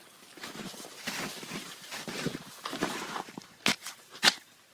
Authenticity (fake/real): fake